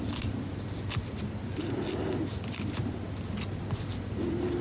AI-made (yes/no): no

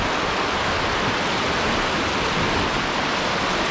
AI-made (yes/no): no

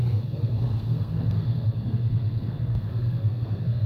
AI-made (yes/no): yes